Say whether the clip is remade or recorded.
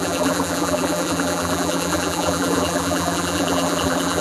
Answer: remade